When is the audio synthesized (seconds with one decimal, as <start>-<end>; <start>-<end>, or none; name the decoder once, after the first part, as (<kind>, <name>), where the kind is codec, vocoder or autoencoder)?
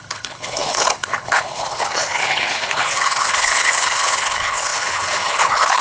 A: 0.0-5.8 (codec, HILCodec)